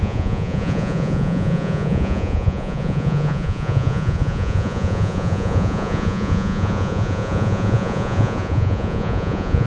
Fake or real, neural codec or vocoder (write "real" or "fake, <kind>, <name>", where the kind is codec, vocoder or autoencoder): fake, vocoder, Vocos